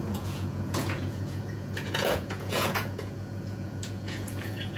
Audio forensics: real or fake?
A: fake